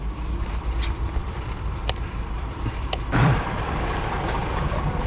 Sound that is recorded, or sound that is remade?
remade